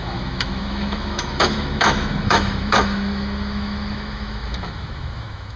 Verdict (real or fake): fake